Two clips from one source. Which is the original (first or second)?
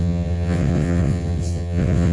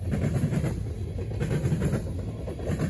second